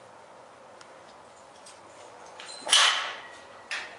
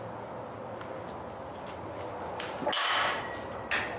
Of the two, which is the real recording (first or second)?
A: second